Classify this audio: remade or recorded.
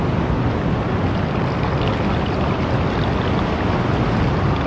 recorded